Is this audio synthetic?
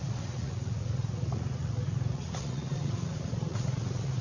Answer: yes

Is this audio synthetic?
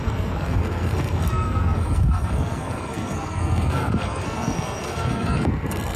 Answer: yes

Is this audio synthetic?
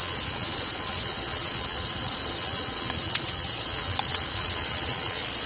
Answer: yes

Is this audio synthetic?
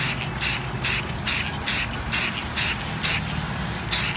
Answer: no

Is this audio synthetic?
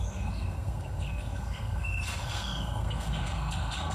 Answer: yes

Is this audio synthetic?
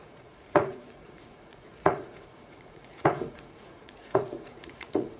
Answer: yes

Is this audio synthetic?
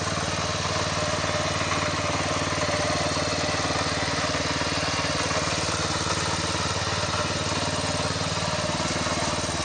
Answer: no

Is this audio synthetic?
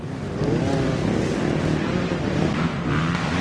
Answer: no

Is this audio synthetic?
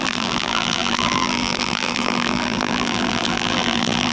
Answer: yes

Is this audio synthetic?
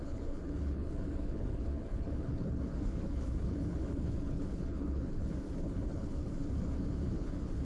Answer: yes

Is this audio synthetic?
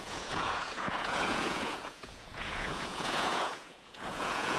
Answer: yes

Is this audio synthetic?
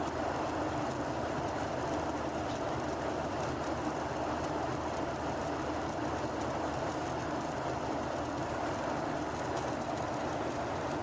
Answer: no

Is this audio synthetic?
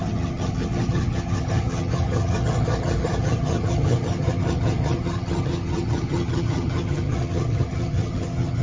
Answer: yes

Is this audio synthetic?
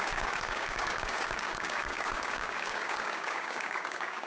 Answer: yes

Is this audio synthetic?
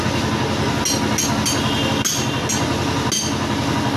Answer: no